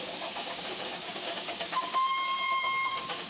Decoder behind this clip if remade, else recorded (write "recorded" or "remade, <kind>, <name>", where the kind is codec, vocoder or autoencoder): remade, codec, DAC